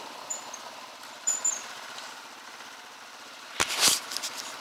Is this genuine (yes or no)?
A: yes